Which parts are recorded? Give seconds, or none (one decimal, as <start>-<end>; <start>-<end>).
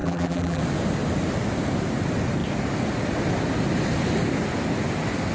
0.6-5.3